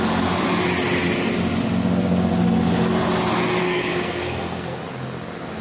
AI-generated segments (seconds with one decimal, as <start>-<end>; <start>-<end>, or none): 3.6-4.8